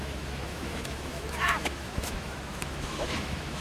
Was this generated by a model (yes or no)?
yes